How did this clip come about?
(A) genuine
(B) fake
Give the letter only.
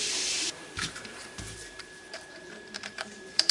B